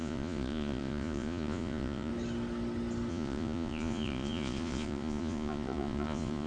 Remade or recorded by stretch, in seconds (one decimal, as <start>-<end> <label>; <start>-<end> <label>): 0.0-2.1 remade; 2.1-3.1 recorded; 3.1-6.5 remade